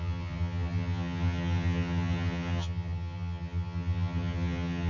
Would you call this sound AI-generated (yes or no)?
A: yes